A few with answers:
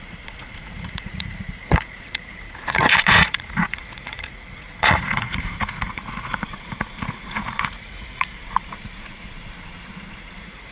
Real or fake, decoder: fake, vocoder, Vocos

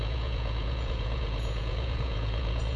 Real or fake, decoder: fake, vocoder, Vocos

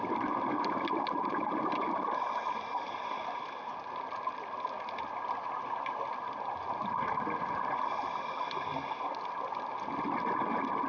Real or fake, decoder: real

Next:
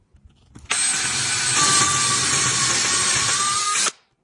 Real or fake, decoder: real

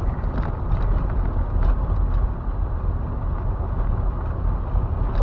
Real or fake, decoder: real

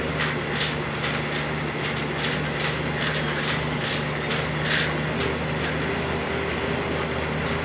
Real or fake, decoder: real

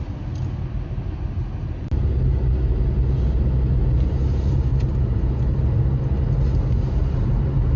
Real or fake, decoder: real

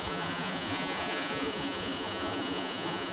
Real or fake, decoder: fake, vocoder, Vocos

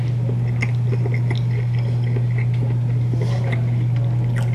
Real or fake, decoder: real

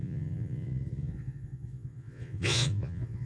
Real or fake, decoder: fake, vocoder, Vocos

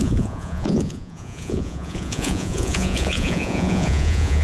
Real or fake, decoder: fake, vocoder, Vocos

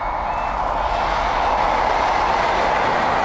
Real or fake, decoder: real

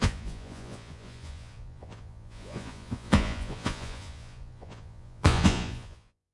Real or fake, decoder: fake, vocoder, Vocos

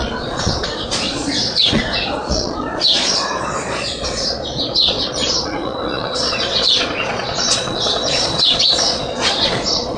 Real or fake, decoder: fake, vocoder, Vocos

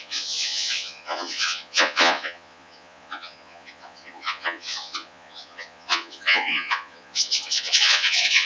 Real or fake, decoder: fake, vocoder, Vocos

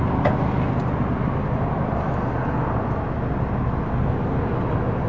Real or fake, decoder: real